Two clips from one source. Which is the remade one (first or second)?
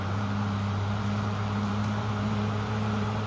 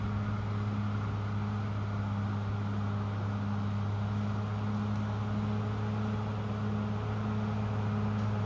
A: first